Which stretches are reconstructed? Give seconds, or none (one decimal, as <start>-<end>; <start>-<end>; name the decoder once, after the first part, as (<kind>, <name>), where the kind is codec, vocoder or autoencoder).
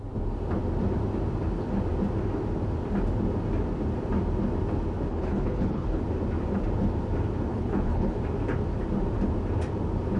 5.1-6.0 (codec, HILCodec); 7.5-8.2